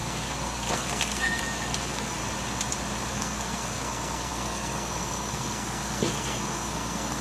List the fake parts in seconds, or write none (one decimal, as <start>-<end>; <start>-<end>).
0.0-2.2; 3.1-7.2